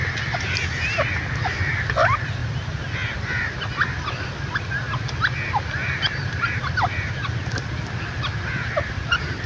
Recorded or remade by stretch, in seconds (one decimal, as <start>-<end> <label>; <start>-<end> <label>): 0.0-5.8 recorded; 5.8-6.8 remade; 6.8-9.5 recorded